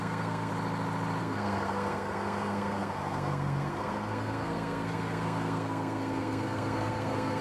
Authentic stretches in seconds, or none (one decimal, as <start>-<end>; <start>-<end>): 0.5-1.2